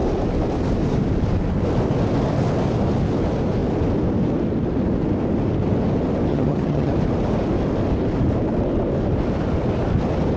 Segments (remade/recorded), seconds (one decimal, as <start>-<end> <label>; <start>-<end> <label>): 0.0-6.3 recorded; 6.3-6.9 remade; 6.9-10.4 recorded